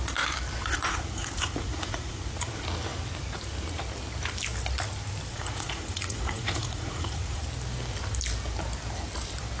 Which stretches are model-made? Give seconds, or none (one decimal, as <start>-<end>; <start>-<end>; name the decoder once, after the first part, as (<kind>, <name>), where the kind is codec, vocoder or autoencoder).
0.7-2.3 (vocoder, Vocos); 5.3-7.4